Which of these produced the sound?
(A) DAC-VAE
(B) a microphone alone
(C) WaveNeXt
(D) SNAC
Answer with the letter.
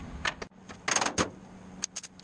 B